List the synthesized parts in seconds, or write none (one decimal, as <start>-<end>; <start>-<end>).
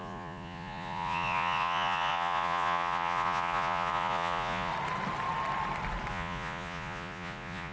0.0-4.7; 6.1-7.7